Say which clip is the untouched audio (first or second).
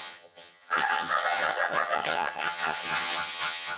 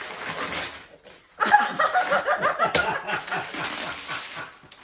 second